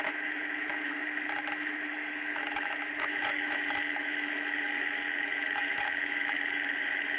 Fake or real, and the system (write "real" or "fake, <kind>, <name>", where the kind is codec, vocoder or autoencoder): fake, autoencoder, DAC-VAE